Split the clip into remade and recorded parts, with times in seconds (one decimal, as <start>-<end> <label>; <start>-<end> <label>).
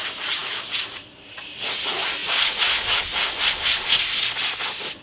0.0-0.4 recorded; 0.4-1.6 remade; 1.6-5.0 recorded